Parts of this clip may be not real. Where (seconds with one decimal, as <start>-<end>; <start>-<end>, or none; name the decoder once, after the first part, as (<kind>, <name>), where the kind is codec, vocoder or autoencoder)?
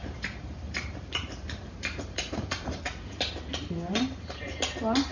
0.0-2.8 (vocoder, BigVGAN v2); 3.5-4.6